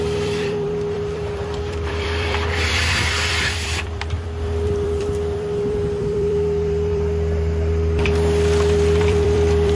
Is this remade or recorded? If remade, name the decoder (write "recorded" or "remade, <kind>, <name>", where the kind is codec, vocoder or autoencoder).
remade, vocoder, BigVGAN v2